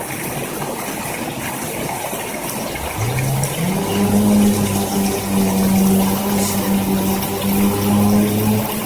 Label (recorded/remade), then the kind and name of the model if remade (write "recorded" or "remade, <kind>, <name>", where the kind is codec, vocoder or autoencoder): recorded